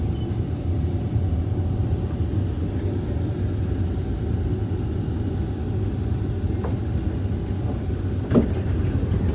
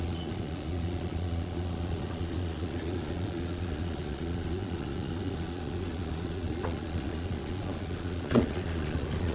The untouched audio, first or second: first